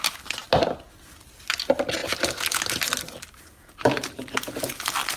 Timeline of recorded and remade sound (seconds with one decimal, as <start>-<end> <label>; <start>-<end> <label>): 0.0-5.2 recorded